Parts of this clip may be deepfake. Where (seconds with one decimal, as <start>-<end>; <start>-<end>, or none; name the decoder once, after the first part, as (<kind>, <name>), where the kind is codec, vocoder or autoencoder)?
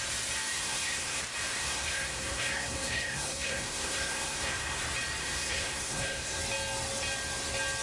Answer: 0.5-1.2 (codec, SNAC); 1.6-4.8; 5.2-6.4